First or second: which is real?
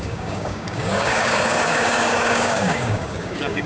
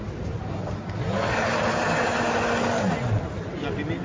second